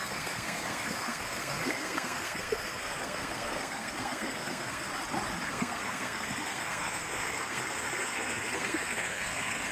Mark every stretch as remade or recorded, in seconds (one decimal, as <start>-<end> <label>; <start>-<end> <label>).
0.0-4.9 remade; 4.9-5.5 recorded; 5.5-9.7 remade